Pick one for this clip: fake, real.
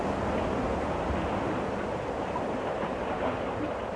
real